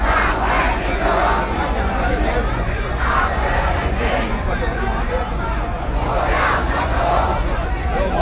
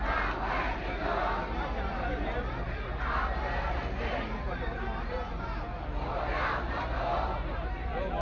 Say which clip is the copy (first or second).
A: first